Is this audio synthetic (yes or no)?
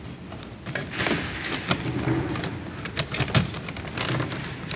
no